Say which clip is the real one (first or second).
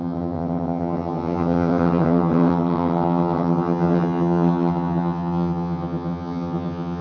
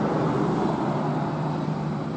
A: second